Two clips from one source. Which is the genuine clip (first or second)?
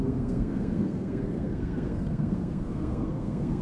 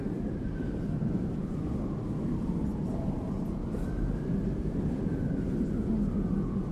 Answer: second